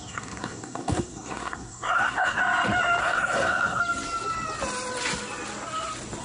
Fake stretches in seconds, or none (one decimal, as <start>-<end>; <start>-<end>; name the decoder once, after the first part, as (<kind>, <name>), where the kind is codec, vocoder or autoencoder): 0.0-2.4 (codec, SNAC); 3.0-3.8